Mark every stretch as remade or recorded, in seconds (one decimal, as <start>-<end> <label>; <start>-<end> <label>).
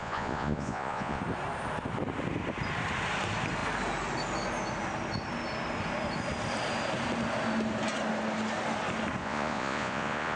0.0-1.2 remade; 1.2-9.2 recorded; 9.2-10.4 remade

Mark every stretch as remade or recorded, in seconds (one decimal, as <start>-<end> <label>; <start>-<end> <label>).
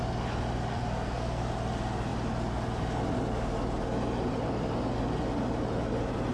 0.0-0.7 recorded; 0.7-1.4 remade; 1.4-6.3 recorded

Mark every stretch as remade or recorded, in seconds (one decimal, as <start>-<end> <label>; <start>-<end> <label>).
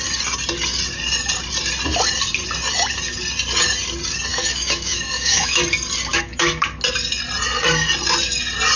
0.0-4.3 recorded; 4.3-5.6 remade; 5.6-6.1 recorded; 6.1-6.6 remade; 6.6-8.8 recorded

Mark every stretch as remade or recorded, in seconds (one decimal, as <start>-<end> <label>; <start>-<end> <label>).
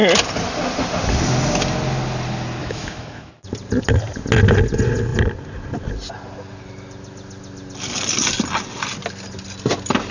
0.0-2.6 recorded; 2.6-3.3 remade; 3.3-10.1 recorded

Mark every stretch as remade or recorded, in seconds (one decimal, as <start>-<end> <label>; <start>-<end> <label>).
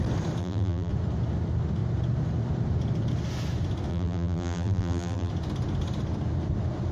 0.0-0.4 recorded; 0.4-0.9 remade; 0.9-3.9 recorded; 3.9-5.3 remade; 5.3-6.9 recorded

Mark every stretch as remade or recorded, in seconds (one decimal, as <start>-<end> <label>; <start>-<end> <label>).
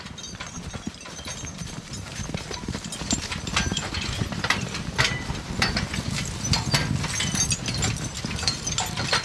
0.0-3.7 recorded; 3.7-4.3 remade; 4.3-9.2 recorded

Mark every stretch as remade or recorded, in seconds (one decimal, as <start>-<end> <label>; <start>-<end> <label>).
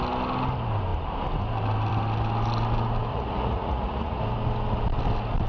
0.0-3.1 recorded; 3.1-4.2 remade; 4.2-5.5 recorded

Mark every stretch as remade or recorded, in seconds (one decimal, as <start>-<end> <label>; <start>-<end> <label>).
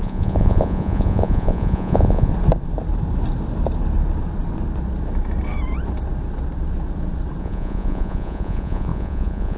0.0-2.3 remade; 2.3-7.4 recorded; 7.4-9.6 remade